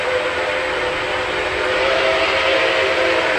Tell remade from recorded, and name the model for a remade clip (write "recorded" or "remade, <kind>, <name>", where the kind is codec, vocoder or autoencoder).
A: recorded